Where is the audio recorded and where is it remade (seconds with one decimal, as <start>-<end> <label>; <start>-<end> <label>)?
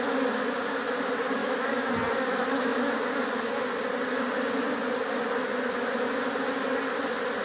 0.0-1.4 recorded; 1.4-1.9 remade; 1.9-7.4 recorded